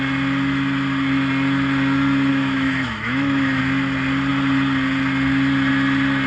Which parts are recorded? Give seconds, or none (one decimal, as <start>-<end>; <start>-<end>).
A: 0.0-2.3; 3.6-6.3